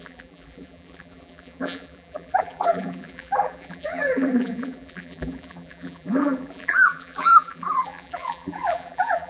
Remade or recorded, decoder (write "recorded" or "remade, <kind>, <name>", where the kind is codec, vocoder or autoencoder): remade, vocoder, BigVGAN v2